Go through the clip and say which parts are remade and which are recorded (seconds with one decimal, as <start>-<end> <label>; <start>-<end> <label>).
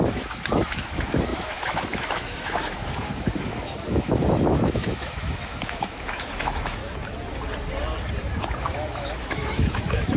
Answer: 0.0-6.8 remade; 6.8-8.6 recorded; 8.6-10.2 remade